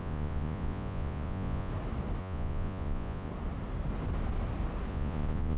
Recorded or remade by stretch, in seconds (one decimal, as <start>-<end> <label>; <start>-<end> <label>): 0.0-1.7 remade; 1.7-2.2 recorded; 2.2-3.3 remade; 3.3-4.9 recorded; 4.9-5.6 remade